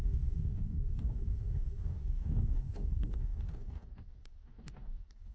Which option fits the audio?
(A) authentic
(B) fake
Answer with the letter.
B